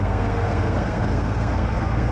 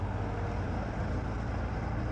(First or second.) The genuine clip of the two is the second